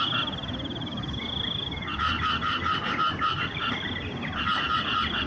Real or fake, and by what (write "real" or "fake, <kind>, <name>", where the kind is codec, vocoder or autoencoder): fake, vocoder, BigVGAN v2